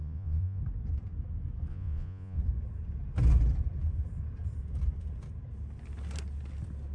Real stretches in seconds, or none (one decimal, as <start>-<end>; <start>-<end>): 0.6-1.7; 2.4-6.9